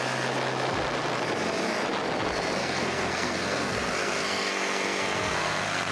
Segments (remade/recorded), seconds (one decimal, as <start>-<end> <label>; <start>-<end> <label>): 0.0-2.6 recorded; 2.6-5.9 remade